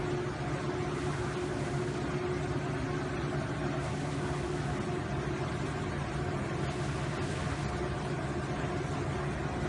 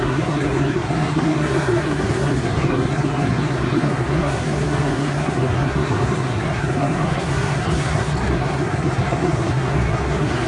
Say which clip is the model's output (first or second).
second